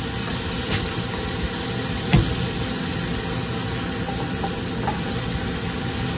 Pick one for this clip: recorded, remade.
recorded